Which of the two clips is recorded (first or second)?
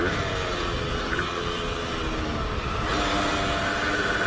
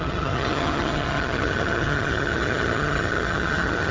first